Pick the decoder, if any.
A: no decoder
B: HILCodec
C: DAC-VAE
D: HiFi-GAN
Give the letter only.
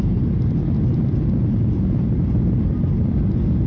A